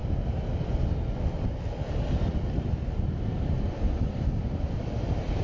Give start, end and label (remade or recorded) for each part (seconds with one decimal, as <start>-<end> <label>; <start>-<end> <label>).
0.0-3.2 recorded; 3.2-5.4 remade